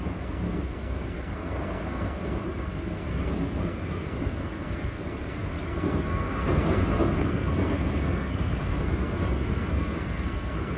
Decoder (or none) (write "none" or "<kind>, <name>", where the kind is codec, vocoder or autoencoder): codec, SNAC